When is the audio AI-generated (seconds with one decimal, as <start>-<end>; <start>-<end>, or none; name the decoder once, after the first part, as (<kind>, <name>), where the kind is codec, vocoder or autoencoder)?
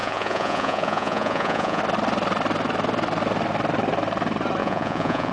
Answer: 0.0-1.8 (vocoder, Vocos); 4.6-5.3